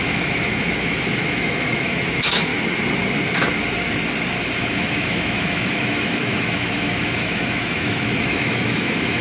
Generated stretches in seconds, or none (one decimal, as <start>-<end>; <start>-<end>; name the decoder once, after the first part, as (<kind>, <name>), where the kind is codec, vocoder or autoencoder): 0.0-2.5 (autoencoder, DAC-VAE); 4.6-9.2